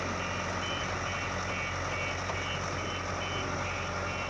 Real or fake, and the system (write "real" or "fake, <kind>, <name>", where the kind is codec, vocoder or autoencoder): real